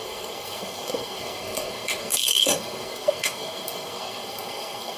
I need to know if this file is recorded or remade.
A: remade